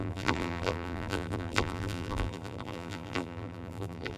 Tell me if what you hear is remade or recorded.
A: remade